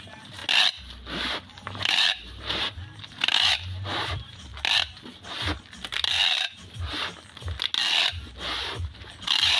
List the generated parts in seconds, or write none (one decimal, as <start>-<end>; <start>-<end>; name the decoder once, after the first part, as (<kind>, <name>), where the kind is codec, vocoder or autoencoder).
0.0-0.4 (vocoder, BigVGAN v2); 1.6-4.5; 8.9-9.6